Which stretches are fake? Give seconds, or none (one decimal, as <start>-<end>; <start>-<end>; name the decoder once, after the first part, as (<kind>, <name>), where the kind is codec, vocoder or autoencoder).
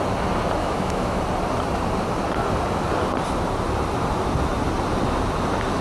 0.6-1.2 (autoencoder, DAC-VAE)